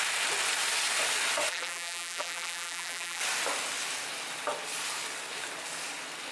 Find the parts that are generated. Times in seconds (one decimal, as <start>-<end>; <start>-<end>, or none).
1.5-3.2